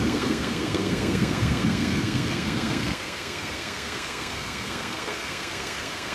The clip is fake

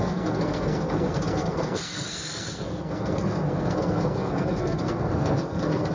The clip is fake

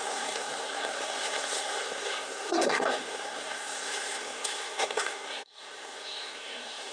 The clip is fake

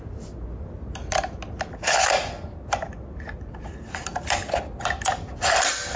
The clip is real